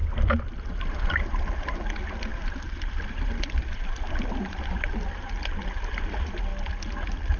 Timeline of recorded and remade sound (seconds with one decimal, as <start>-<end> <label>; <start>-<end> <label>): 0.0-1.1 remade; 1.1-2.3 recorded; 2.3-5.1 remade; 5.1-7.4 recorded